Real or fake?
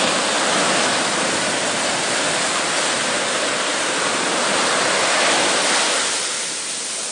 real